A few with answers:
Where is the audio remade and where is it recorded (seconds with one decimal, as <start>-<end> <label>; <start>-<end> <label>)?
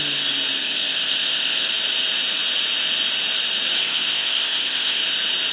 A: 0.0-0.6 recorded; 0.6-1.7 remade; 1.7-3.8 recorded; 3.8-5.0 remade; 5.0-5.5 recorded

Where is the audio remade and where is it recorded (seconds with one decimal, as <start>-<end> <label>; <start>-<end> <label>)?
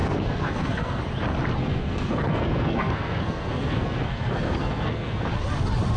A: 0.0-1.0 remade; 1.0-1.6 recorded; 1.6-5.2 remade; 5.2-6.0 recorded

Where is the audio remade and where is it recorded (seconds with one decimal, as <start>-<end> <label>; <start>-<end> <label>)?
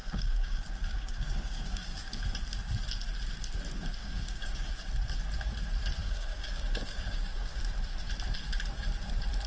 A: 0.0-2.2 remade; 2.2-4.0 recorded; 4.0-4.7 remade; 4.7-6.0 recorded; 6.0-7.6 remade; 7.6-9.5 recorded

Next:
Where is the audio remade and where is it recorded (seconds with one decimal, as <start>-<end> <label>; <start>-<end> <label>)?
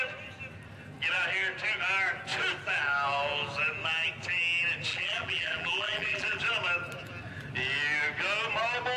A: 0.0-4.9 recorded; 4.9-6.4 remade; 6.4-9.0 recorded